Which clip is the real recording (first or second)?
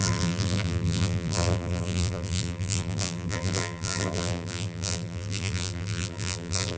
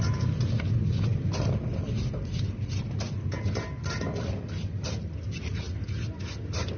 second